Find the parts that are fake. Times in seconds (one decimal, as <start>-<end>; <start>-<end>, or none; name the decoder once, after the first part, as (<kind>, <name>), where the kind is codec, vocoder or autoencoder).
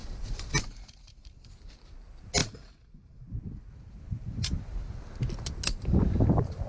0.0-0.6 (vocoder, BigVGAN v2)